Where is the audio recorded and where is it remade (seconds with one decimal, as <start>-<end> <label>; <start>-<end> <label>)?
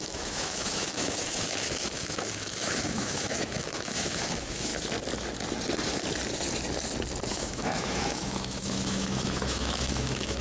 0.0-4.7 remade; 4.7-7.3 recorded; 7.3-10.4 remade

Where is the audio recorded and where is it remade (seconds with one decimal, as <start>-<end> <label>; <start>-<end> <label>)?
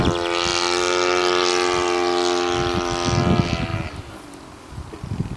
0.0-5.4 recorded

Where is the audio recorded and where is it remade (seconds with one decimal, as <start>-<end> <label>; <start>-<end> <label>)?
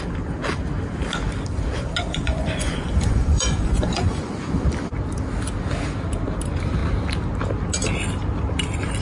0.0-2.1 recorded; 2.1-4.3 remade; 4.3-9.0 recorded